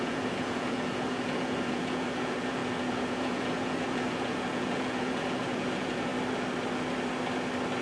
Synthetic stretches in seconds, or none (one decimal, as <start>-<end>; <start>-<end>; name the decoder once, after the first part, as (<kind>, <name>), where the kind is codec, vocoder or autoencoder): 0.0-6.1 (vocoder, Vocos)